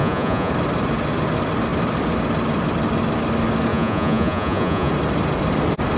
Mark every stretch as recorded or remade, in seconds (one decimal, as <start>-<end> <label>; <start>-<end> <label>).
0.0-0.5 remade; 0.5-3.7 recorded; 3.7-4.9 remade; 4.9-6.0 recorded